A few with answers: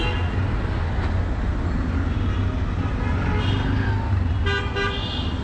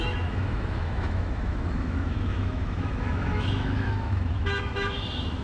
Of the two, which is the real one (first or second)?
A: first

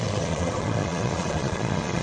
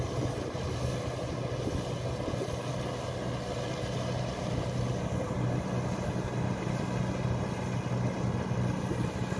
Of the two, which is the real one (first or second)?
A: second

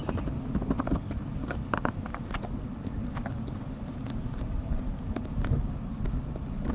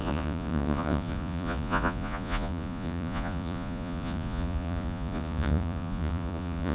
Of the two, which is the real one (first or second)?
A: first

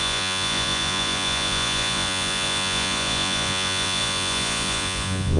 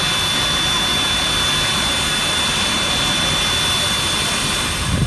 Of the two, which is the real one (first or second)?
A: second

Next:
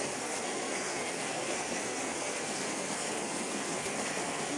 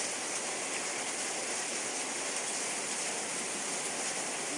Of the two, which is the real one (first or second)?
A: second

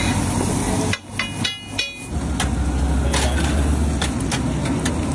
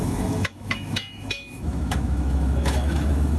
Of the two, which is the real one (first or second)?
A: first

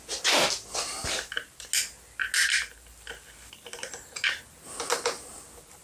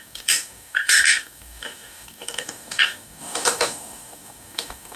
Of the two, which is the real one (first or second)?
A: first